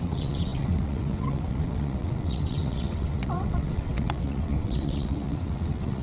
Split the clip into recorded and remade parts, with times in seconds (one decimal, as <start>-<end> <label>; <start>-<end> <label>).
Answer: 0.0-6.0 remade